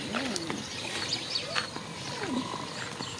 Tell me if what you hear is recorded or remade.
recorded